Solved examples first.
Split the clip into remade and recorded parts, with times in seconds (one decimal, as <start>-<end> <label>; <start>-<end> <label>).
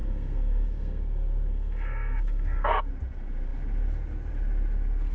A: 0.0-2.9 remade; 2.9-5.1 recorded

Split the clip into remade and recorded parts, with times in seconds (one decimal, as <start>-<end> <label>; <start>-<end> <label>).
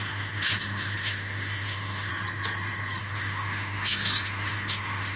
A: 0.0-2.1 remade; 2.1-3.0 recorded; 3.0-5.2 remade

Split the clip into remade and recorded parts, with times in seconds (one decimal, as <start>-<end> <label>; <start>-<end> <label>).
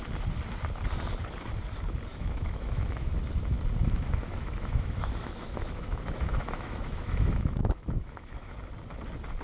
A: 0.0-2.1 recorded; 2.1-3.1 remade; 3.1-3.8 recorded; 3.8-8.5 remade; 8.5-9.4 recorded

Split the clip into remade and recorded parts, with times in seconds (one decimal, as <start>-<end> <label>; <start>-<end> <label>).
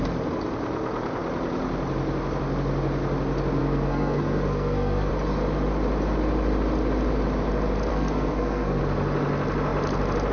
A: 0.0-3.6 recorded; 3.6-5.1 remade; 5.1-7.9 recorded; 7.9-8.8 remade; 8.8-10.3 recorded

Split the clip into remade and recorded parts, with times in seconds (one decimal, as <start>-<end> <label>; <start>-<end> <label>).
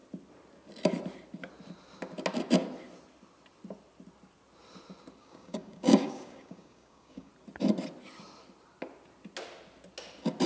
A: 0.0-5.2 recorded; 5.2-7.3 remade; 7.3-10.5 recorded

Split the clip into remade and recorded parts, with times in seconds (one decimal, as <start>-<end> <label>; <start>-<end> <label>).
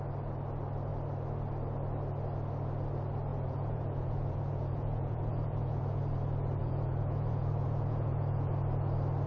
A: 0.0-3.3 recorded; 3.3-6.0 remade; 6.0-6.6 recorded; 6.6-8.5 remade; 8.5-9.3 recorded